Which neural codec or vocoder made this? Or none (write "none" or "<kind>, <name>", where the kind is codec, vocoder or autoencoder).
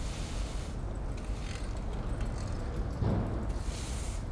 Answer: none